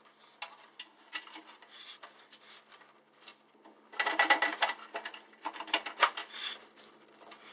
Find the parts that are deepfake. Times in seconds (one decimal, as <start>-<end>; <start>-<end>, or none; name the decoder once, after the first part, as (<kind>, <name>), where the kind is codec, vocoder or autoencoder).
none